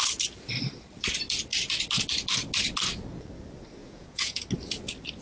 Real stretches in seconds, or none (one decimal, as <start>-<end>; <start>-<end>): 0.0-3.8; 4.4-5.2